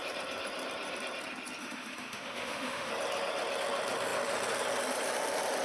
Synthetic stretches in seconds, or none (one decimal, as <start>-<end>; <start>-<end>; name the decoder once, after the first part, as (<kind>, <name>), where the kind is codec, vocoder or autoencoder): 1.6-2.9 (autoencoder, DAC-VAE)